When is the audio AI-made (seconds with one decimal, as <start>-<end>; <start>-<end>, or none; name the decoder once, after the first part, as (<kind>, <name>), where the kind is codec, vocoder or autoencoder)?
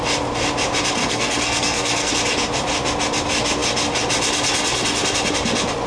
1.0-2.1 (codec, SNAC)